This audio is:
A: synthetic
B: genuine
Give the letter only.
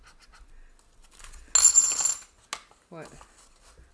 B